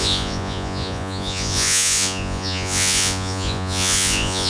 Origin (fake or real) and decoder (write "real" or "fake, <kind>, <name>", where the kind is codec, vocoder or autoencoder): fake, vocoder, Vocos